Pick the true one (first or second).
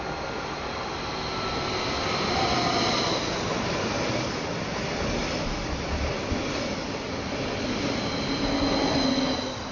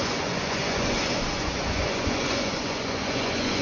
first